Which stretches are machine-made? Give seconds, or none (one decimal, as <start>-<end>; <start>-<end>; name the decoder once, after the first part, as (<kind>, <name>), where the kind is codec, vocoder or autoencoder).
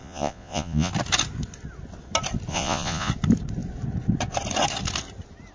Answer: 0.0-0.9 (vocoder, Vocos); 2.5-3.1